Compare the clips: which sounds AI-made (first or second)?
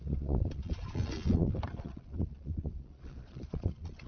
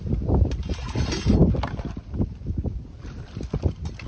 first